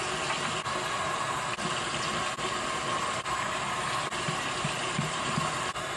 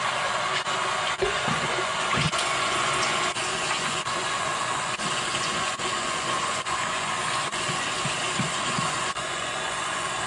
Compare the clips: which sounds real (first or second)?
first